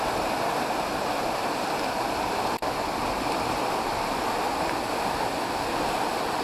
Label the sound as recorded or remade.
recorded